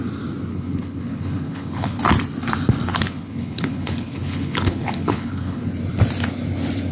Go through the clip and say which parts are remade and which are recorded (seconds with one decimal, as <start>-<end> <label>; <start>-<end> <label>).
0.0-0.5 recorded; 0.5-2.0 remade; 2.0-2.9 recorded; 2.9-5.7 remade; 5.7-6.9 recorded